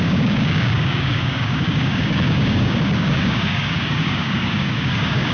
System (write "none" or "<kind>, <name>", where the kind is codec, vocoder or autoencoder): codec, DAC